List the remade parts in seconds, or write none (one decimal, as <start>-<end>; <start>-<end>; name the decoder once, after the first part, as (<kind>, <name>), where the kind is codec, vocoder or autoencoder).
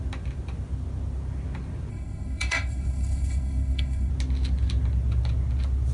1.9-4.1 (codec, SNAC)